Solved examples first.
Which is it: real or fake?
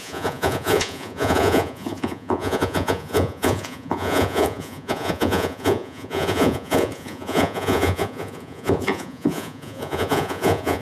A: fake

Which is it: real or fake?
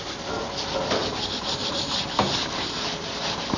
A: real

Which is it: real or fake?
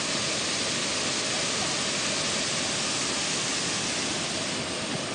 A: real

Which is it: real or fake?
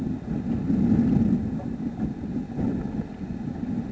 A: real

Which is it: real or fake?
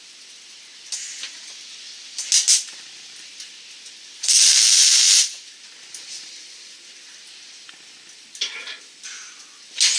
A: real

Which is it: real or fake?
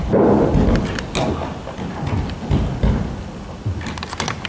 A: real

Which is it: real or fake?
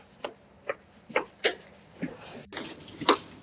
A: real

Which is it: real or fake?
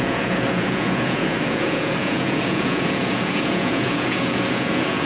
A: fake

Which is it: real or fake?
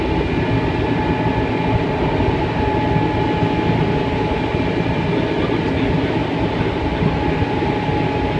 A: real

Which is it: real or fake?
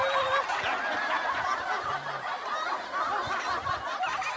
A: real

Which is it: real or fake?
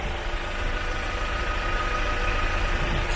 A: real